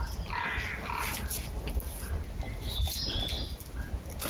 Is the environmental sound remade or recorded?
recorded